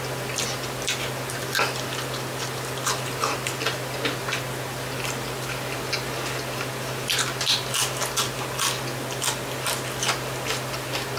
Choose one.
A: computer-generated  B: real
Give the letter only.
B